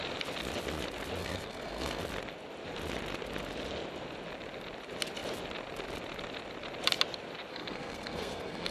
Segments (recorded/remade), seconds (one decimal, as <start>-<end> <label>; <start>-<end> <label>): 0.0-1.2 recorded; 1.2-2.0 remade; 2.0-7.5 recorded; 7.5-8.7 remade